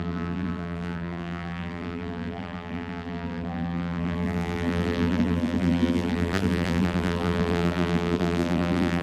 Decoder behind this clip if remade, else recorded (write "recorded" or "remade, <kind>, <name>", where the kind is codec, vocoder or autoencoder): remade, vocoder, BigVGAN v2